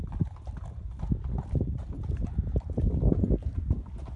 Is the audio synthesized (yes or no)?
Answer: no